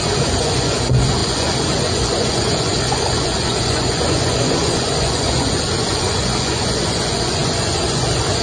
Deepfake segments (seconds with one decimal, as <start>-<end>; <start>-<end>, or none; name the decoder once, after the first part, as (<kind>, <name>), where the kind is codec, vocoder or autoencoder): 0.0-8.4 (vocoder, Vocos)